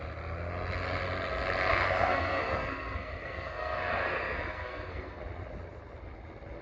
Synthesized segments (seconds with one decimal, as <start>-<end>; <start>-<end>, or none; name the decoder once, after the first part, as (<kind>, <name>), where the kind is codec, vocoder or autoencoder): 1.7-5.2 (codec, SNAC)